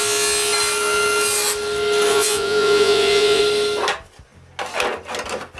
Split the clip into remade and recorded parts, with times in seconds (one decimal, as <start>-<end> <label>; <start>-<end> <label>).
0.0-2.1 recorded; 2.1-3.4 remade; 3.4-5.6 recorded